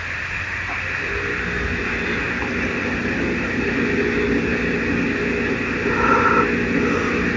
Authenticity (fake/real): real